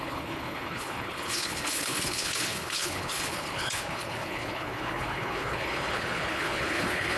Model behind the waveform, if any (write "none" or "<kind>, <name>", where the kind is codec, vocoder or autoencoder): codec, HILCodec